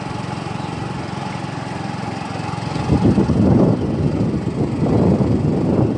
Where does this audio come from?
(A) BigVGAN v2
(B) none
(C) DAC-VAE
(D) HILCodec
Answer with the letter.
B